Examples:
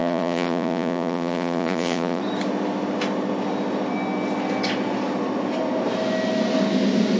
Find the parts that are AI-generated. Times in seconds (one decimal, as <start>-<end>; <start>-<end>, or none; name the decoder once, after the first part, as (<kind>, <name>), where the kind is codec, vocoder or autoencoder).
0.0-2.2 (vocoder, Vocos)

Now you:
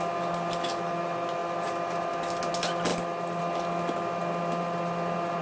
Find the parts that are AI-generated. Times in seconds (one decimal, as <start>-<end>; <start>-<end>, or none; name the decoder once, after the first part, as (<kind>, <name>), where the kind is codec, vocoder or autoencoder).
none

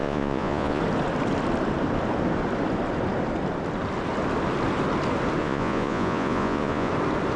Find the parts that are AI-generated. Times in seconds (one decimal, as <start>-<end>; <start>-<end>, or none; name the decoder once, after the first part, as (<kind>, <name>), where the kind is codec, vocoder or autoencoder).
0.0-0.8 (vocoder, Vocos); 5.4-6.9